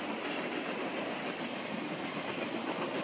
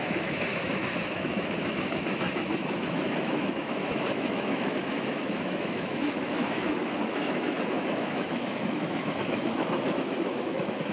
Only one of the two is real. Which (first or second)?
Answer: first